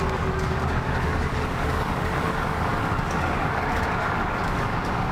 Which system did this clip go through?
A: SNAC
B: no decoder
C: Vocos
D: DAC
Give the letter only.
D